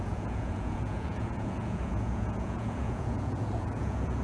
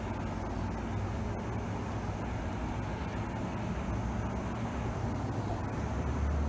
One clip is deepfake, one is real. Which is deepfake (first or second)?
first